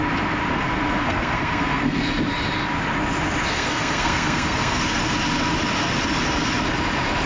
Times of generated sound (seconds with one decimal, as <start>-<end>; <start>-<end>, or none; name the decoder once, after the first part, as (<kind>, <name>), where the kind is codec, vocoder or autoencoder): 0.5-2.0 (codec, SNAC); 3.5-4.8

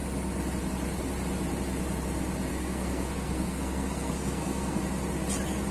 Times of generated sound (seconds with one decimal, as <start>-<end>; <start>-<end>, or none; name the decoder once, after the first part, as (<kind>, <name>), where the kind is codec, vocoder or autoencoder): 2.5-4.8 (codec, SNAC)

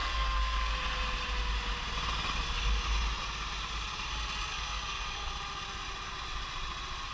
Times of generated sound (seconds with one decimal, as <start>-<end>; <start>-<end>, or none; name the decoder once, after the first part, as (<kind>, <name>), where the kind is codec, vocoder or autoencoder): 0.0-0.7 (codec, SNAC); 4.5-5.3

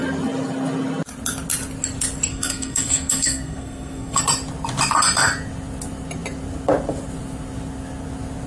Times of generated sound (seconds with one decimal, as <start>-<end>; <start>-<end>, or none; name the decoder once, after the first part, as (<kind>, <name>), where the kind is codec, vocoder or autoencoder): 2.3-4.2 (codec, SNAC)

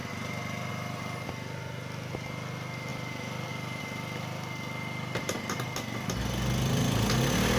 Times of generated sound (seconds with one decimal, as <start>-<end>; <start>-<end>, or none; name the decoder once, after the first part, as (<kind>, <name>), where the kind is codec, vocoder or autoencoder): none